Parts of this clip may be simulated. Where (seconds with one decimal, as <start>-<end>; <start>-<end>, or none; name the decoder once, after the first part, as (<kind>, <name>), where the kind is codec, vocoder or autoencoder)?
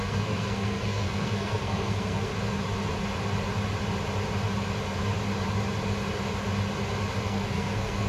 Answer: 0.0-2.3 (codec, SNAC); 7.2-8.1